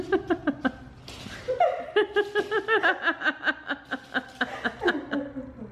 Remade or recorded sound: recorded